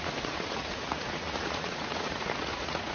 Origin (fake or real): fake